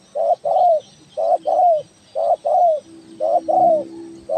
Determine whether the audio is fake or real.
real